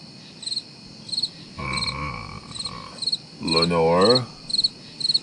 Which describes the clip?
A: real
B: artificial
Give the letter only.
A